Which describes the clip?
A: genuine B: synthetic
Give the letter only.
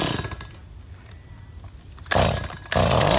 A